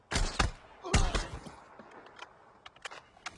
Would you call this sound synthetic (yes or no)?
no